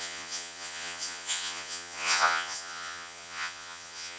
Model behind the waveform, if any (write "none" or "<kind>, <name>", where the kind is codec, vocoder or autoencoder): vocoder, Vocos